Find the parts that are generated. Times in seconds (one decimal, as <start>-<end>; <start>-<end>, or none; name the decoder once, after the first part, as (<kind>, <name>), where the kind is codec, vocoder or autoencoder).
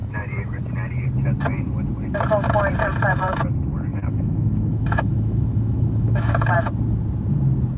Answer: 0.0-0.6 (autoencoder, DAC-VAE); 3.9-6.3